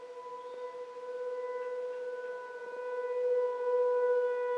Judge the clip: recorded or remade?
recorded